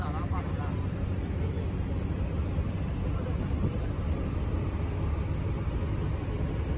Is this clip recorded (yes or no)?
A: yes